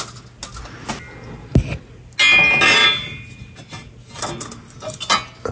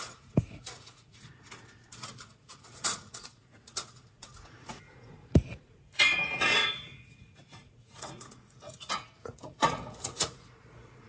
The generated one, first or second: second